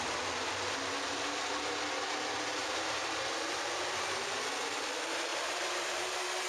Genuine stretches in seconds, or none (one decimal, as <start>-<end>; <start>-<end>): 0.0-2.6; 3.2-5.3; 5.9-6.5